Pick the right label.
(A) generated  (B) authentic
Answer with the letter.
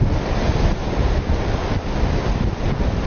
B